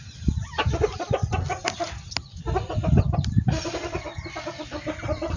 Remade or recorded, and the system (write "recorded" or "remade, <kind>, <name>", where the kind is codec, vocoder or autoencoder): recorded